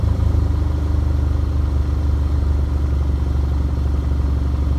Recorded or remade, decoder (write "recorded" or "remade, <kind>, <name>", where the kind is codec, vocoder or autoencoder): recorded